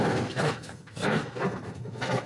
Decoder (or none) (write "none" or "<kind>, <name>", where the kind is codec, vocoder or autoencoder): codec, SNAC